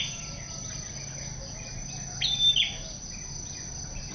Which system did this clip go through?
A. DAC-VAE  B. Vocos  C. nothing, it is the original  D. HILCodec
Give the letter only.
C